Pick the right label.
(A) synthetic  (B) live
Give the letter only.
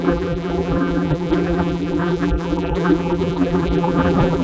A